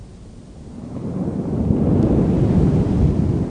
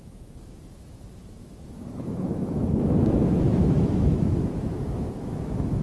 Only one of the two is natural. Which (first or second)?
first